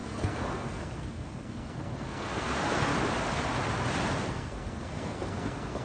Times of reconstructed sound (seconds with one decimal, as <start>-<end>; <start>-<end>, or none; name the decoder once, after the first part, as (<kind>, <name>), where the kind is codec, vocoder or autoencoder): 0.0-2.9 (codec, SNAC); 4.3-5.8